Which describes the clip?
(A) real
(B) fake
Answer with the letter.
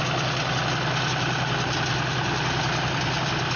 A